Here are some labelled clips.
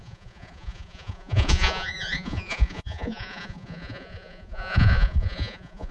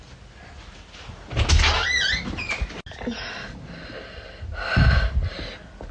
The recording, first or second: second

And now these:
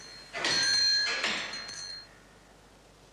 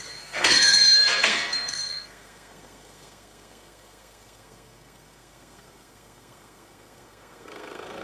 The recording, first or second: first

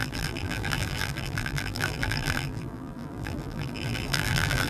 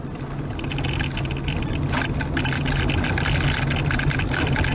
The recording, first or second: second